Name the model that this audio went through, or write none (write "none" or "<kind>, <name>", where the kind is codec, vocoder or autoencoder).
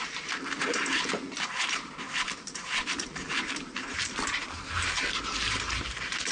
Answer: vocoder, BigVGAN v2